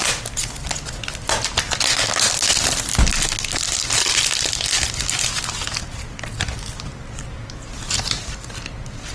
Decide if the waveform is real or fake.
real